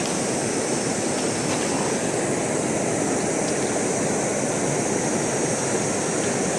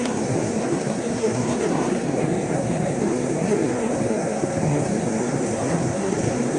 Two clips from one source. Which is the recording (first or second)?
first